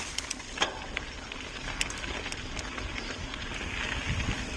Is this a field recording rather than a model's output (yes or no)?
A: yes